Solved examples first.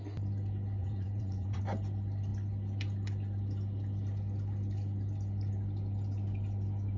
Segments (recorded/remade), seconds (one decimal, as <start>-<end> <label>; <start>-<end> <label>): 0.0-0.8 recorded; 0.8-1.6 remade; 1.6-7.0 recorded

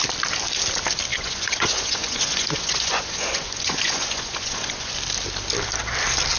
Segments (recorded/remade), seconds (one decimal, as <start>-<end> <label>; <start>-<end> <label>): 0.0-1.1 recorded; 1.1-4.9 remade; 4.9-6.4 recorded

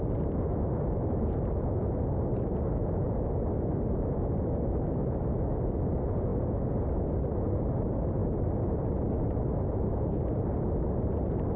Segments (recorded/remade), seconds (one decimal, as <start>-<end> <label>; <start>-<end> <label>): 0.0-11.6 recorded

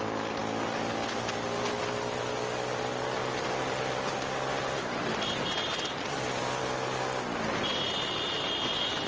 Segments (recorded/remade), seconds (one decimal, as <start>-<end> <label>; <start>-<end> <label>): 0.0-9.1 recorded